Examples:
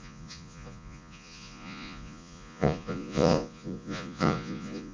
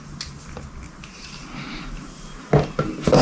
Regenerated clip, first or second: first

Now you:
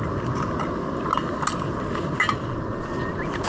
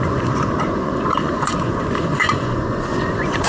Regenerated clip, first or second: second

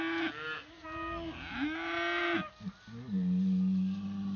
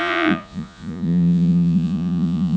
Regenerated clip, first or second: second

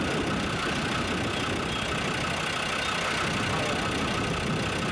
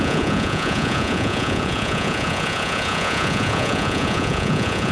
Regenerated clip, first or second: second